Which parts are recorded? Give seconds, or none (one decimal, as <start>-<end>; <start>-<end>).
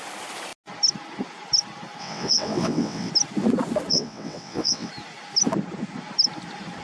0.0-2.0; 3.1-3.9; 4.9-6.8